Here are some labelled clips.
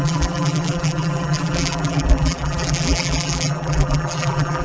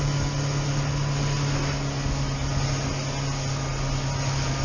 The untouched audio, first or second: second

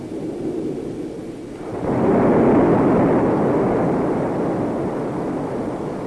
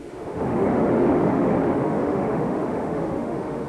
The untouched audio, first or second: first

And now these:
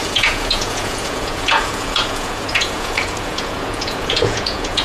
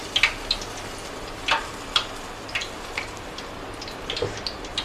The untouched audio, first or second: second